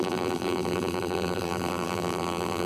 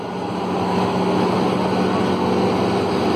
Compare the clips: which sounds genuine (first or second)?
second